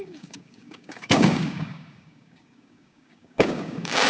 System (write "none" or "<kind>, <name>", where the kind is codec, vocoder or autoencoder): codec, DAC